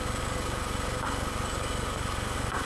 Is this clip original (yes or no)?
no